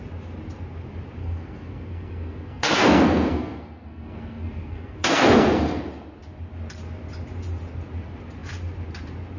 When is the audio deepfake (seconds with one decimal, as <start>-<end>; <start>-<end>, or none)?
1.2-5.8